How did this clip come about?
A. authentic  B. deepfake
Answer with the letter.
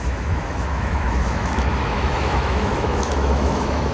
B